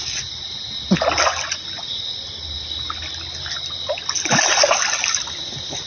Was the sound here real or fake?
real